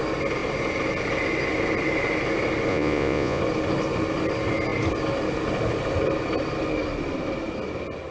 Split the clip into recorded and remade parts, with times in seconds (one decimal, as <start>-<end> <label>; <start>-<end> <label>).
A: 0.0-2.7 recorded; 2.7-3.4 remade; 3.4-8.1 recorded